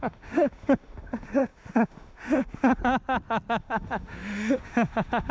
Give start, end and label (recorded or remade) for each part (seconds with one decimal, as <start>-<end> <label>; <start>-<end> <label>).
0.0-2.8 remade; 2.8-3.6 recorded; 3.6-5.3 remade